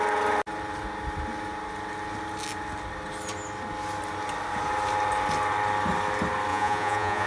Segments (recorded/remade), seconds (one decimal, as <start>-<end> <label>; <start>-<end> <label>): 0.0-6.5 recorded; 6.5-7.3 remade